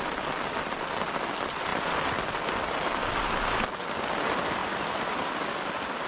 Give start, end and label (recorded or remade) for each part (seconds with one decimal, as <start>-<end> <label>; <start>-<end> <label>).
0.0-1.7 recorded; 1.7-2.5 remade; 2.5-4.6 recorded; 4.6-5.5 remade; 5.5-6.1 recorded